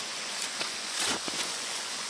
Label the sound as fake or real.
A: fake